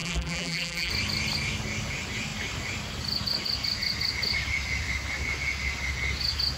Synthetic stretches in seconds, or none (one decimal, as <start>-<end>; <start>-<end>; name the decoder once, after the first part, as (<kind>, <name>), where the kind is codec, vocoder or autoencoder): 0.0-0.9 (vocoder, BigVGAN v2)